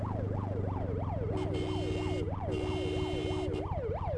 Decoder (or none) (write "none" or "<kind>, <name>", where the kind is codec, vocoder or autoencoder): none